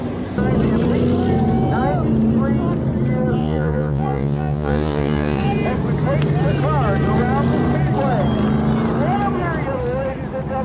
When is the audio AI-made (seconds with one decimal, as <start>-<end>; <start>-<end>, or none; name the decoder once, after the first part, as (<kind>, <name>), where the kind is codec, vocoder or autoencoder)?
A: 3.4-5.4 (vocoder, Vocos)